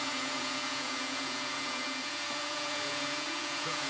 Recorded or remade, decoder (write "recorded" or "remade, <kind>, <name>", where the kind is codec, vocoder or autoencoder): remade, vocoder, Vocos